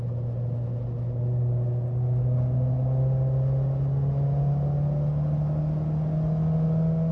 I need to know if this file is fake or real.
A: real